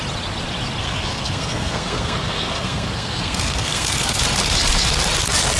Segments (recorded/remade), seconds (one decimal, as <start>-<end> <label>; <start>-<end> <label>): 0.0-0.8 recorded; 0.8-4.2 remade; 4.2-5.6 recorded